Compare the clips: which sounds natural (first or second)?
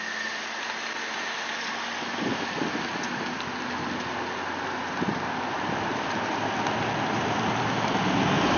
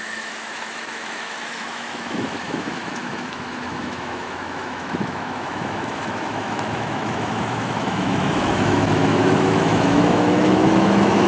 first